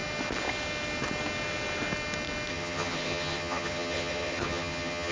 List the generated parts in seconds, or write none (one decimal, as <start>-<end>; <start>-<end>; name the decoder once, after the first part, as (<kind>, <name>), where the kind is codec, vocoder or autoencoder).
2.5-5.1 (vocoder, HiFi-GAN)